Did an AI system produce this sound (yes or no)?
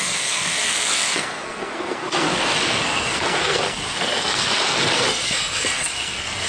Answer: yes